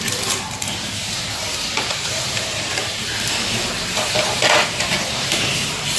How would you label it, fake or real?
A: fake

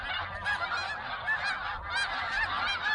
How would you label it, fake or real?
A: real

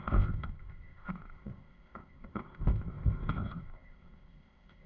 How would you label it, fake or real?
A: fake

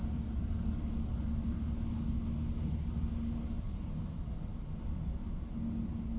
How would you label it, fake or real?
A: real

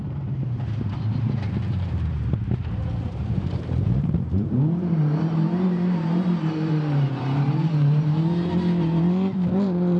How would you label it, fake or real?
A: fake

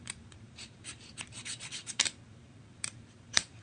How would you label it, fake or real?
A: fake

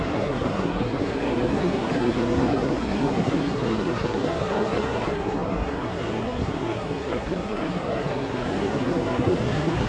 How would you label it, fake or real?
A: fake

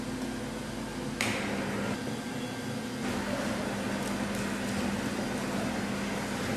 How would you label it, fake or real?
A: real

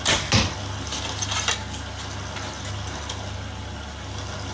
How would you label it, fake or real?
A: real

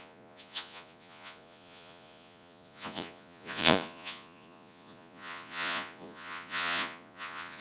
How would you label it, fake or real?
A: fake